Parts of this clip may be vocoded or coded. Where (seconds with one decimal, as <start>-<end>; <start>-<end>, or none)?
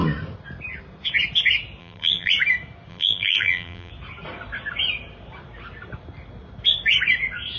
1.8-2.3; 2.9-3.9